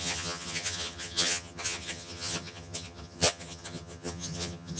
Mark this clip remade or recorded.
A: remade